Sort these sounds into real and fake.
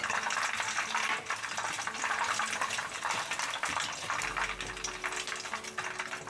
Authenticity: real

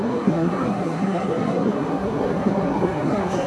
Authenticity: fake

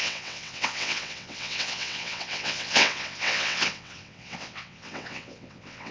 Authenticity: fake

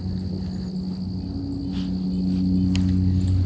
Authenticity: real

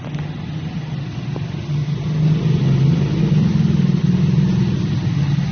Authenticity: real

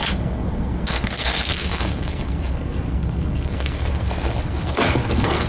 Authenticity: fake